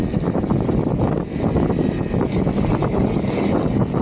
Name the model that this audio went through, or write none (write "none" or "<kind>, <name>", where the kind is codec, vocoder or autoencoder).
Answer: none